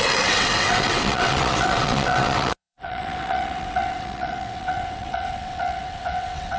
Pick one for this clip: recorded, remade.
remade